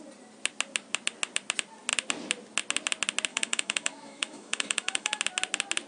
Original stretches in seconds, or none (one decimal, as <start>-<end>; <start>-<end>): 0.0-3.3; 5.2-5.9